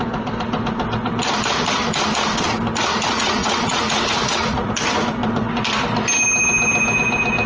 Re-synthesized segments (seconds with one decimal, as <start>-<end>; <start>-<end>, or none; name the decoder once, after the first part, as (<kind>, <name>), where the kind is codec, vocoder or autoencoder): 2.9-4.7 (vocoder, Vocos)